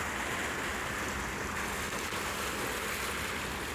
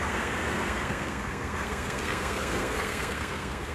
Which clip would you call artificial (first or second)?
second